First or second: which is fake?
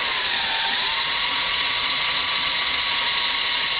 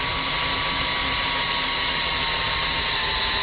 first